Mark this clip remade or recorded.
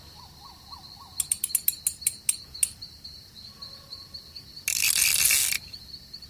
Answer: recorded